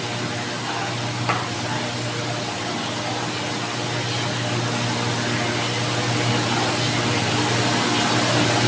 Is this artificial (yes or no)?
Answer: no